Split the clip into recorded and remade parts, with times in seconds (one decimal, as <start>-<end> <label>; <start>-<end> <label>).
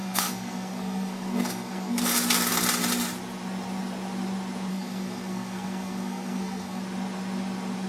0.0-2.0 remade; 2.0-4.7 recorded; 4.7-6.8 remade; 6.8-7.9 recorded